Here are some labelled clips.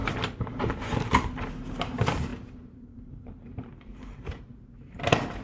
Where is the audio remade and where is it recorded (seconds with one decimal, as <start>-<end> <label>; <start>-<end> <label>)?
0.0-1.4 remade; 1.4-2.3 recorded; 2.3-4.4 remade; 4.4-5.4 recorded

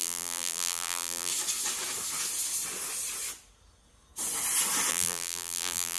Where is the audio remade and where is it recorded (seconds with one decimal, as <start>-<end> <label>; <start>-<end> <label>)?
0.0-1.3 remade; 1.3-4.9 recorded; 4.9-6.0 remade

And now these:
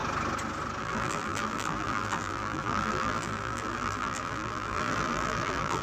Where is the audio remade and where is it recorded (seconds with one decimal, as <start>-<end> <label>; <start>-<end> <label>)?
0.0-0.8 recorded; 0.8-5.8 remade